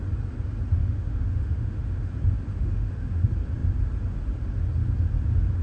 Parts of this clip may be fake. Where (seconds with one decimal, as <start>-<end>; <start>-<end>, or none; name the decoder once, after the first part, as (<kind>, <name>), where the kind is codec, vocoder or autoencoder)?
0.8-2.1 (autoencoder, DAC-VAE); 2.5-3.2